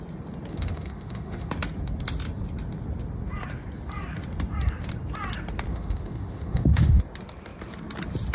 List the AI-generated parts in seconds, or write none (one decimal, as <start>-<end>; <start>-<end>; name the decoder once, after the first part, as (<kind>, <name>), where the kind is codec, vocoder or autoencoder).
0.5-1.5 (autoencoder, DAC-VAE); 5.7-7.0